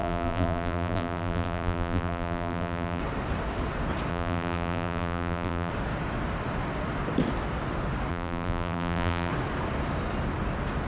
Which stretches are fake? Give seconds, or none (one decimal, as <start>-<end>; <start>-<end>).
0.0-3.0; 4.1-5.7; 8.1-9.3